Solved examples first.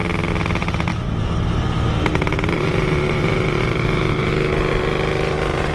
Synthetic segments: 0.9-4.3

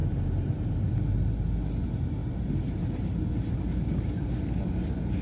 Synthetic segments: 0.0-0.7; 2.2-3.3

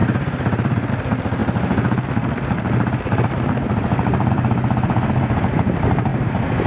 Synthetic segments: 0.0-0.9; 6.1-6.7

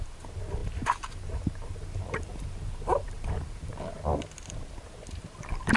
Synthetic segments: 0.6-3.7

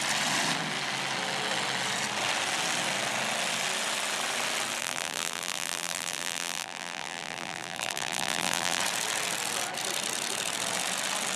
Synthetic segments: 4.8-8.8